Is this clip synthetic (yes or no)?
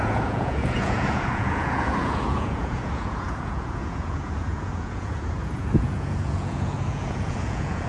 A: yes